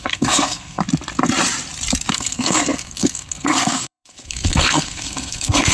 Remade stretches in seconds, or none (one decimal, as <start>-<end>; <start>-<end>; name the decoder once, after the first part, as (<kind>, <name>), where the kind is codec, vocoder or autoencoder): 0.0-0.8 (codec, SNAC); 2.1-5.7